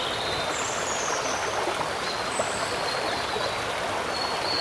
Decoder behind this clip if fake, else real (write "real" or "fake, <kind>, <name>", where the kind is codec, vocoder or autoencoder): real